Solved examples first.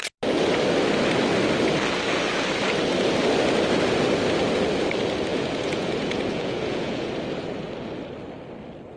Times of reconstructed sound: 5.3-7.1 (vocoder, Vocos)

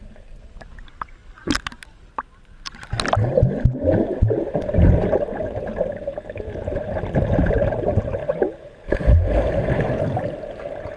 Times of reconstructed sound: none